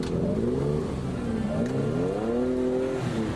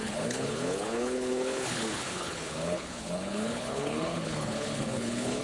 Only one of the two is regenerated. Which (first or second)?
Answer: second